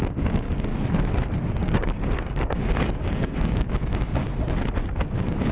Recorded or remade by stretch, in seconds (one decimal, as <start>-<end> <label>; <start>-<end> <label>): 0.0-0.7 remade; 0.7-1.6 recorded; 1.6-4.2 remade; 4.2-5.5 recorded